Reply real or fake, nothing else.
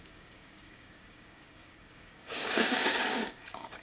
fake